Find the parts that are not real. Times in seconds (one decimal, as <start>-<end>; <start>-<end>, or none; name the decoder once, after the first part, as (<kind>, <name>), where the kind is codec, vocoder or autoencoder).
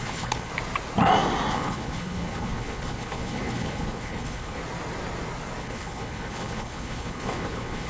0.0-0.5 (codec, HILCodec); 1.5-4.6; 5.6-7.9